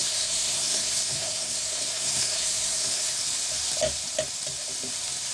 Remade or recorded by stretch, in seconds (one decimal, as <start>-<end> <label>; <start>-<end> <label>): 0.0-3.2 remade; 3.2-5.3 recorded